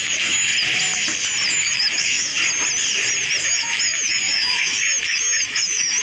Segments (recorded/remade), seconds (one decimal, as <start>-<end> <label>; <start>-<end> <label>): 0.0-0.5 remade; 0.5-1.5 recorded; 1.5-2.3 remade; 2.3-3.4 recorded; 3.4-6.0 remade